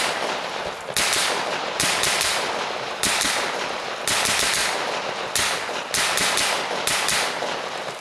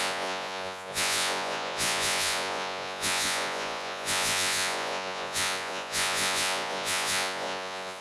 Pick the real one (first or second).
first